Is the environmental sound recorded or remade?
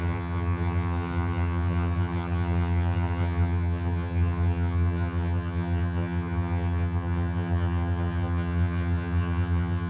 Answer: remade